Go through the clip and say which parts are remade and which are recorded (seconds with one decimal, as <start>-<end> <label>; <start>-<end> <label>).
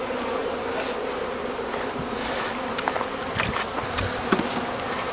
0.0-5.1 recorded